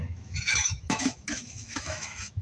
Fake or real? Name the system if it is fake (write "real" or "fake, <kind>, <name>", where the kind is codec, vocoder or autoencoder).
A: fake, autoencoder, DAC-VAE